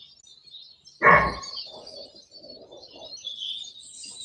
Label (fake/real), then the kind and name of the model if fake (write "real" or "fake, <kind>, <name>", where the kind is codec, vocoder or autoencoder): real